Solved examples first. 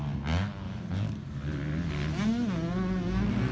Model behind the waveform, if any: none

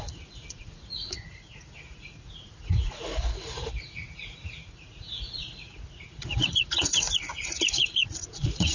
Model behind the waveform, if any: vocoder, Vocos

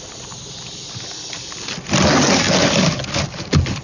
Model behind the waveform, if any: none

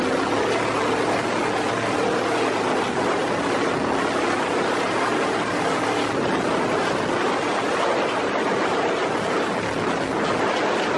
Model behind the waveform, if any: none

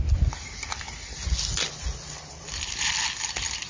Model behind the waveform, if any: none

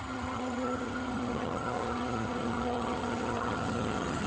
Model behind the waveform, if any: vocoder, HiFi-GAN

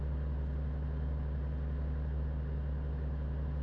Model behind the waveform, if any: none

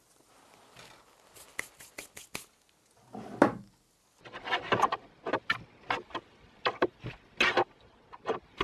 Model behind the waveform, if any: none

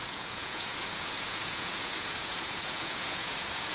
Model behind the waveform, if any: vocoder, Vocos